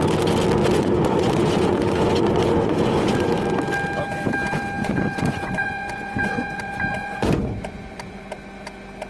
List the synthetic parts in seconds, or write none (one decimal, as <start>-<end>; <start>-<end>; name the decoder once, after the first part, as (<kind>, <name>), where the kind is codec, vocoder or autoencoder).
0.6-3.4 (vocoder, Vocos); 4.8-8.2